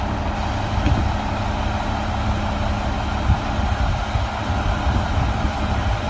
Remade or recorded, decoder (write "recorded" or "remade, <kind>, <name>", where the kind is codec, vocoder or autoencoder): recorded